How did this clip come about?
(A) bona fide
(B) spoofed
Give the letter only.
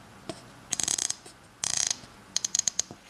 B